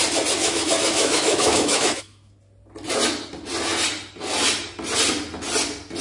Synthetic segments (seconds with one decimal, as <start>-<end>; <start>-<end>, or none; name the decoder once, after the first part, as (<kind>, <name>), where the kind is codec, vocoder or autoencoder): 0.4-2.3 (autoencoder, DAC-VAE)